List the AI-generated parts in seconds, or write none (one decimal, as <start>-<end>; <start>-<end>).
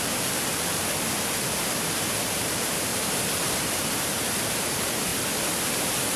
0.0-0.5; 1.7-2.9; 4.5-5.1; 5.6-6.2